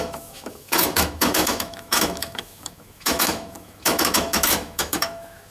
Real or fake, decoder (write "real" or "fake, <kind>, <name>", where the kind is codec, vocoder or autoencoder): fake, autoencoder, DAC-VAE